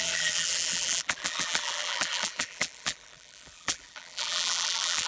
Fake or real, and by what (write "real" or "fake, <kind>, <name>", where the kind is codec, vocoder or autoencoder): fake, vocoder, BigVGAN v2